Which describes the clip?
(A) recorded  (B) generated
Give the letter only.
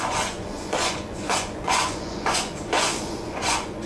B